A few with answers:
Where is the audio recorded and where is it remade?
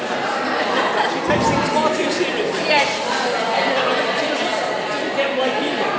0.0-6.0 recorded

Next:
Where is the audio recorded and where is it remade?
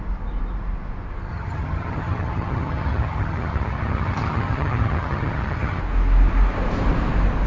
0.0-1.3 recorded; 1.3-5.8 remade; 5.8-7.5 recorded